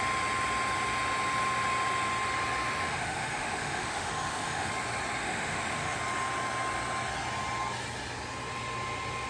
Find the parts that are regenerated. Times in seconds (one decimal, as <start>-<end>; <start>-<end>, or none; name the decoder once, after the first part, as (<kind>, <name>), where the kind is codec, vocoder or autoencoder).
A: 2.7-4.7 (autoencoder, DAC-VAE); 5.2-6.0